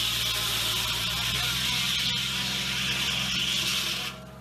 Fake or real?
real